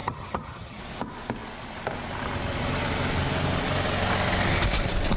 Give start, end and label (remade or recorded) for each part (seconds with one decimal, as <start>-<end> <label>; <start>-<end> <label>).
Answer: 0.0-0.8 remade; 0.8-5.2 recorded